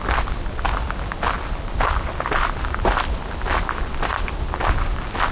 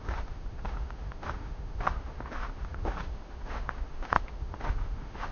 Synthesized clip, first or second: second